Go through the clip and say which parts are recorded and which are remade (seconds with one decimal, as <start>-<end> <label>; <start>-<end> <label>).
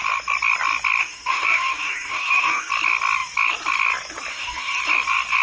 0.0-1.0 recorded; 1.0-2.7 remade; 2.7-4.3 recorded; 4.3-4.8 remade; 4.8-5.4 recorded